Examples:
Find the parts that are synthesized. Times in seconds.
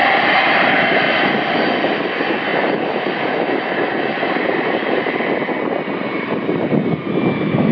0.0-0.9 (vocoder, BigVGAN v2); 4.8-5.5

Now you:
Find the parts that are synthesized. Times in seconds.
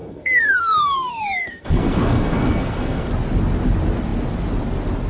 0.0-3.1 (codec, SNAC)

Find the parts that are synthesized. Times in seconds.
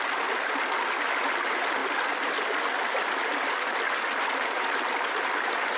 none